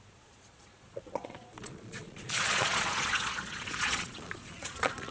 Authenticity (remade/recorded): remade